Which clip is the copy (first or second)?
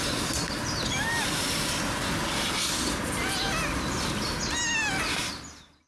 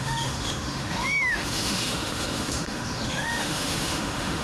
second